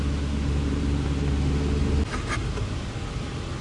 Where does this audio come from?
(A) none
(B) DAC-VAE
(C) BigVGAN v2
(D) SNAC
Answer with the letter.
A